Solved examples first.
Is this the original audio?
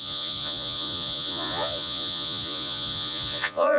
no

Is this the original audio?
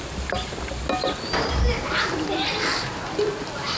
yes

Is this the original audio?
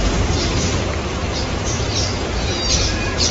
no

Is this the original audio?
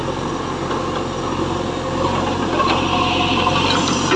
yes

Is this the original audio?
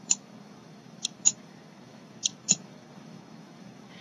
no